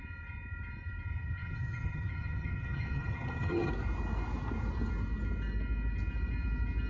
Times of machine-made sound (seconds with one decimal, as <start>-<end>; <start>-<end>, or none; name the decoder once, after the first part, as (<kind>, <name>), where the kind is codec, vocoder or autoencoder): 1.1-3.7 (vocoder, HiFi-GAN)